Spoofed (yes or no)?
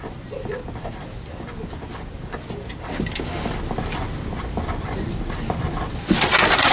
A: no